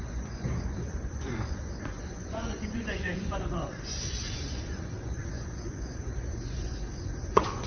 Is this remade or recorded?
remade